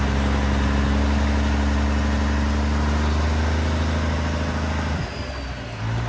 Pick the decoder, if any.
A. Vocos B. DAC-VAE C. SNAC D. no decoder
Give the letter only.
D